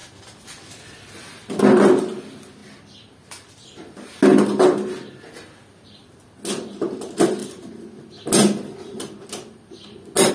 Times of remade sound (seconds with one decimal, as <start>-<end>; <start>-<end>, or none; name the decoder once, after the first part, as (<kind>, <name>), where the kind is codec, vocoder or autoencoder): none